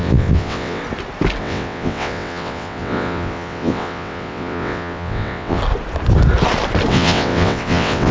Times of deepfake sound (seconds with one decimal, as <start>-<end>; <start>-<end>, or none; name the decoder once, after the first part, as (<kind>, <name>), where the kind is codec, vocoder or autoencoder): 0.0-0.8 (vocoder, WaveNeXt); 1.4-5.6; 6.9-8.1